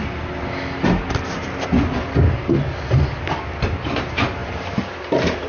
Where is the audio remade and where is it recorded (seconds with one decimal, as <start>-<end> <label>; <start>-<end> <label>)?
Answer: 0.0-5.5 remade